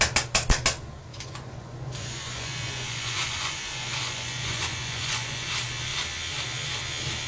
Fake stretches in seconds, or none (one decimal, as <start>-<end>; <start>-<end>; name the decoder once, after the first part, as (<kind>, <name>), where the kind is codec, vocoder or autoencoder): 1.1-5.5 (vocoder, Vocos)